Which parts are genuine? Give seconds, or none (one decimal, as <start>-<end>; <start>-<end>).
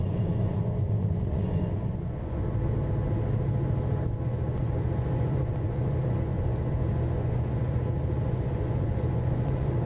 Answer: 2.4-4.2